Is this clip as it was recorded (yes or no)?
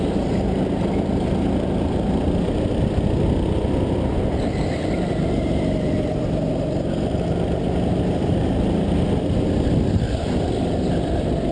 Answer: yes